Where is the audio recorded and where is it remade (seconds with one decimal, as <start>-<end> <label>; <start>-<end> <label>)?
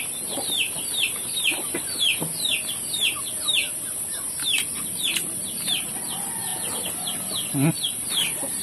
0.0-6.5 remade; 6.5-7.7 recorded; 7.7-8.6 remade